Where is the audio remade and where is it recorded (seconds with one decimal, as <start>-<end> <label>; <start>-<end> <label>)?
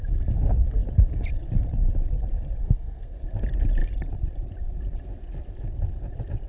0.0-2.6 recorded; 2.6-3.2 remade; 3.2-6.5 recorded